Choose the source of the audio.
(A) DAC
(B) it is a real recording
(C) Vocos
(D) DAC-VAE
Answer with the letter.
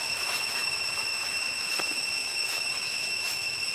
D